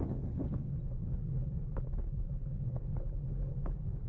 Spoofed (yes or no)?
yes